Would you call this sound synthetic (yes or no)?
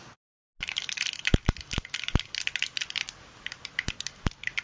no